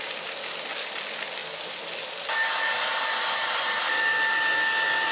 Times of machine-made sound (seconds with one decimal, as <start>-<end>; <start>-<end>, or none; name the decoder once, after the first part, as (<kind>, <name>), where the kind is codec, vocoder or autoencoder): none